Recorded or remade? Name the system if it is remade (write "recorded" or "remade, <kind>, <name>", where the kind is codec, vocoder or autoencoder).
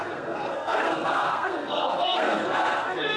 remade, codec, SNAC